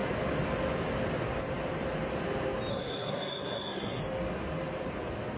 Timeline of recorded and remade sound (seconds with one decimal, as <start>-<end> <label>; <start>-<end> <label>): 0.0-2.7 recorded; 2.7-4.0 remade; 4.0-5.4 recorded